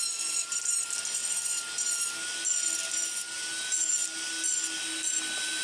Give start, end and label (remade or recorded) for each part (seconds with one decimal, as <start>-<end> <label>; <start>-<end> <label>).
0.0-5.6 recorded